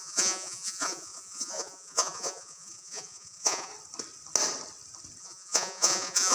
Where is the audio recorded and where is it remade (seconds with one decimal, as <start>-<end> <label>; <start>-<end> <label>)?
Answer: 0.0-3.7 remade; 3.7-5.2 recorded; 5.2-6.3 remade